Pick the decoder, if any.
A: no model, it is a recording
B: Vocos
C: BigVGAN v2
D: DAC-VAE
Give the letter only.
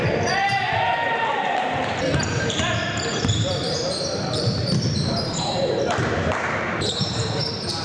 C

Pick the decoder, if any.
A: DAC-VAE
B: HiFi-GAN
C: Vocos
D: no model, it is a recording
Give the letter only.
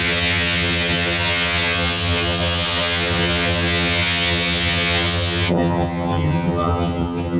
B